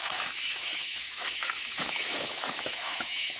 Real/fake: fake